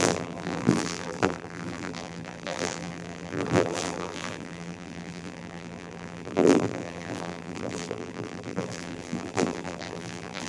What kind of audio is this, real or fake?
fake